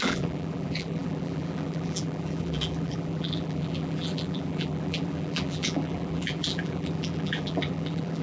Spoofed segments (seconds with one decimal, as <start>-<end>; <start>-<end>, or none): 0.0-8.2